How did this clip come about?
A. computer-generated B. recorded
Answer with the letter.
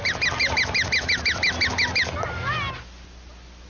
B